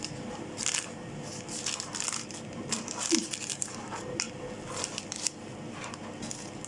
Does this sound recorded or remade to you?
recorded